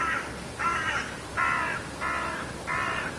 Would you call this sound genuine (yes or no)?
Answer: yes